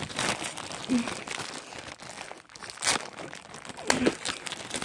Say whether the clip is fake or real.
real